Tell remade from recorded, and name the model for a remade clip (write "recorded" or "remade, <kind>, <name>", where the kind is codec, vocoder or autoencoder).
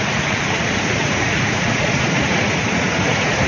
remade, vocoder, Vocos